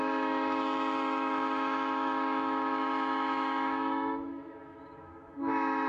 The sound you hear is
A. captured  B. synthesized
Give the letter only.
B